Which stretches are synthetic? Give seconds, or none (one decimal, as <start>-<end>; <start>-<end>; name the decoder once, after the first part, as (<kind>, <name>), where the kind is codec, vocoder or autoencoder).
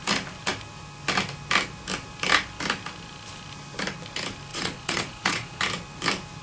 4.5-5.6 (vocoder, Vocos)